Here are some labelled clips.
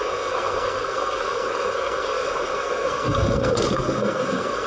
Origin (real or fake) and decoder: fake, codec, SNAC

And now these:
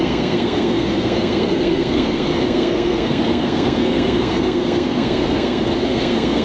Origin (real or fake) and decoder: fake, codec, SNAC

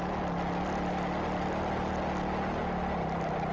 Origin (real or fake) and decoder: real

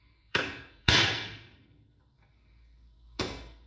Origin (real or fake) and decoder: fake, codec, SNAC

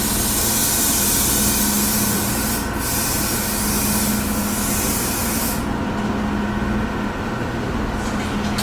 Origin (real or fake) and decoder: real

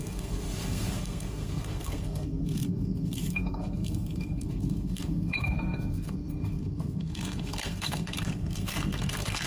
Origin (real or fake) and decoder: fake, codec, SNAC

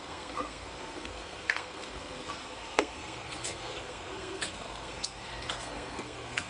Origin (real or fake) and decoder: fake, codec, SNAC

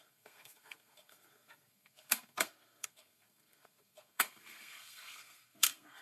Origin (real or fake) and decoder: fake, codec, SNAC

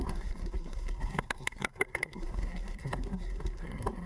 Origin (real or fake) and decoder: fake, codec, SNAC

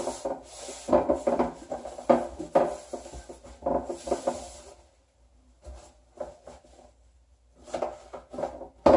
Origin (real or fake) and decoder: real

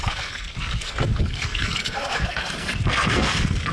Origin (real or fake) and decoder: fake, codec, SNAC